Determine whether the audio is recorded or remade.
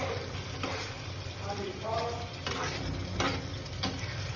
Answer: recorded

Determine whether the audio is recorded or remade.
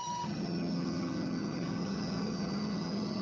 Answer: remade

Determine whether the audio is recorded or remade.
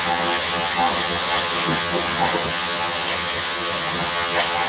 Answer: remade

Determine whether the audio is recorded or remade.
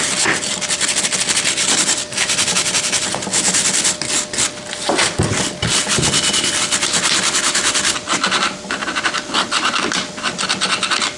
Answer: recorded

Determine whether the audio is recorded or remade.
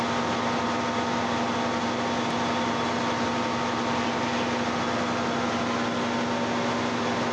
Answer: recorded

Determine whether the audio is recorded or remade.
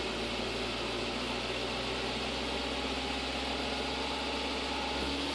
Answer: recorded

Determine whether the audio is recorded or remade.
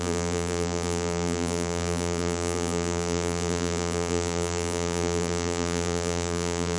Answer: remade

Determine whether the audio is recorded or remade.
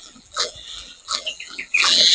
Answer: remade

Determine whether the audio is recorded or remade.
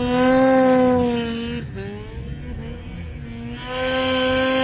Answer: recorded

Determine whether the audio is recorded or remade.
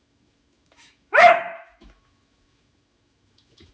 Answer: remade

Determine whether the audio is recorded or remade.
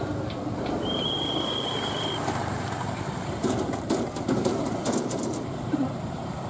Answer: remade